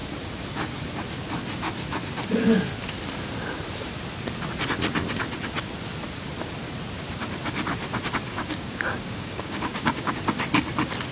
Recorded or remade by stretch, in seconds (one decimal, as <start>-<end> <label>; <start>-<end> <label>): 0.0-8.3 recorded; 8.3-10.2 remade; 10.2-11.1 recorded